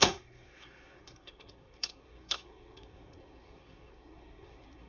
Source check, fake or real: fake